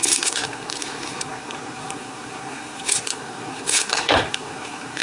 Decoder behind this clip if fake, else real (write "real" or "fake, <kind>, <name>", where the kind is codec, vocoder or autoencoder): fake, codec, SNAC